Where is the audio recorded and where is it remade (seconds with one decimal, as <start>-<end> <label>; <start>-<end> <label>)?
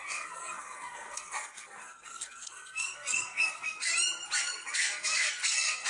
0.0-3.9 remade; 3.9-4.4 recorded; 4.4-5.9 remade